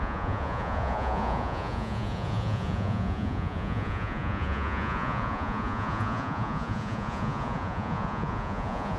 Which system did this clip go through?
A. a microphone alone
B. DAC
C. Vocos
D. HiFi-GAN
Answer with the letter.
C